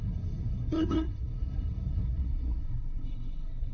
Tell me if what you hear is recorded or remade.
remade